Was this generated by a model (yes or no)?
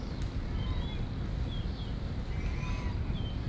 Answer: no